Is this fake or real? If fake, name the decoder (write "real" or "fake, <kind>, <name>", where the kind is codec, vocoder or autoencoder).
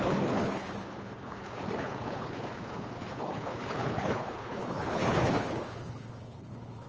fake, codec, HILCodec